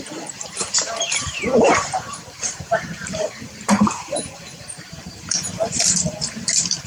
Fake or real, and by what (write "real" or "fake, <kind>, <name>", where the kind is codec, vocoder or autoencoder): fake, vocoder, BigVGAN v2